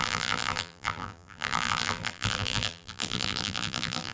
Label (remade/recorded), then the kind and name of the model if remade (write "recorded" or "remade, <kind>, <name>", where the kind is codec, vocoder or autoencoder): remade, vocoder, BigVGAN v2